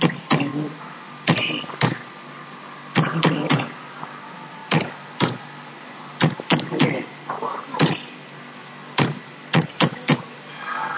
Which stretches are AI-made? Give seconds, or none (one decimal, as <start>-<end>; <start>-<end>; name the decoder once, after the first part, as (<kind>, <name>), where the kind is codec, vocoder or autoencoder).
0.0-0.5 (vocoder, BigVGAN v2); 2.3-4.6; 5.7-11.0